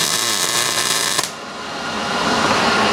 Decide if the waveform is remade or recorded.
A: remade